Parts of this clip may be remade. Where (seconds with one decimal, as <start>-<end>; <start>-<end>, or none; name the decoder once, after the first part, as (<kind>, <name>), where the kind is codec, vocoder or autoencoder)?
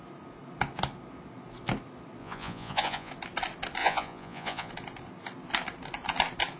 2.2-3.1 (vocoder, Vocos); 3.8-4.7